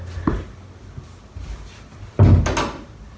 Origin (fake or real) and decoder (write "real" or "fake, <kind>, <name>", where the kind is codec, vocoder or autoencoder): real